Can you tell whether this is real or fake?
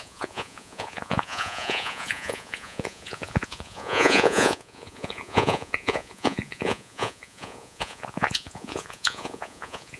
fake